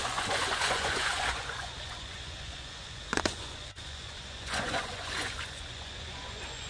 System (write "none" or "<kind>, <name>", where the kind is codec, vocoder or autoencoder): vocoder, Vocos